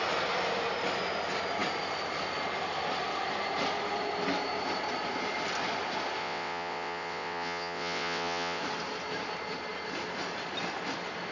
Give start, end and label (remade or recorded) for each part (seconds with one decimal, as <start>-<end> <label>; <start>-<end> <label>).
0.0-6.2 recorded; 6.2-8.6 remade; 8.6-11.3 recorded